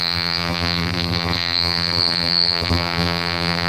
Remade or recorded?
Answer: remade